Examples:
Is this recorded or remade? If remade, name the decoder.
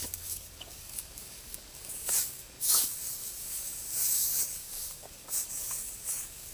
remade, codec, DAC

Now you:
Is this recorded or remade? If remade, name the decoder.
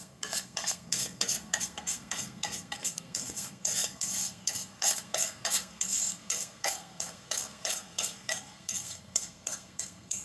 remade, codec, SNAC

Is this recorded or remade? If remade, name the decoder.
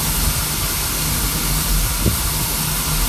recorded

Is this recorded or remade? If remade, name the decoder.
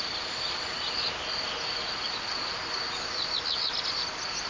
recorded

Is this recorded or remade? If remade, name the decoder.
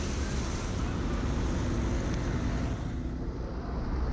recorded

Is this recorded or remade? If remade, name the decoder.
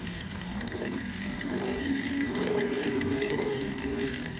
remade, codec, DAC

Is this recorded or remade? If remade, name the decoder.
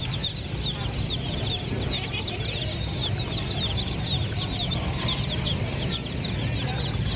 recorded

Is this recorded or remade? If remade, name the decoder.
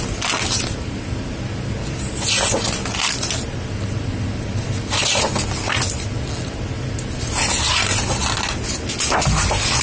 recorded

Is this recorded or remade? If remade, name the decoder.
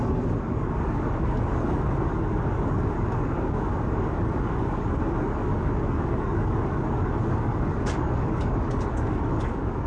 remade, codec, DAC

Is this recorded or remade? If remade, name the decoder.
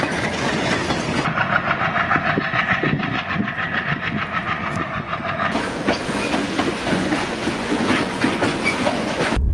remade, vocoder, Vocos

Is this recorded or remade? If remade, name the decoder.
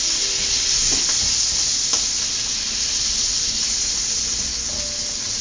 recorded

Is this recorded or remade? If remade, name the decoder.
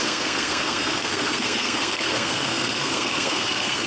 remade, codec, SNAC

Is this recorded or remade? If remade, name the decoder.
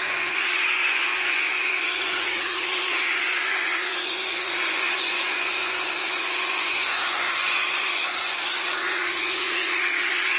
remade, vocoder, Vocos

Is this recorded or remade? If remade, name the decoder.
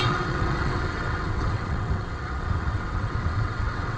remade, vocoder, WaveNeXt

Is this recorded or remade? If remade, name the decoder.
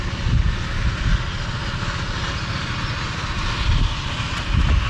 recorded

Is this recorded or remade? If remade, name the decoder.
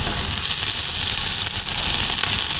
recorded